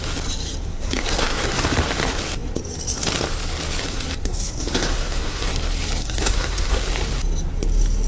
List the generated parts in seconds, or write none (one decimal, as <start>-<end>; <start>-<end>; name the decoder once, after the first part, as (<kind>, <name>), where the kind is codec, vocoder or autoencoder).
0.7-1.7 (codec, SNAC); 4.2-5.5; 6.0-6.8